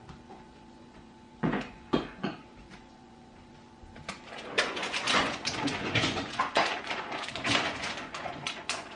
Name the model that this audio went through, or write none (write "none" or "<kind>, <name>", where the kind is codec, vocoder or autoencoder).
vocoder, Vocos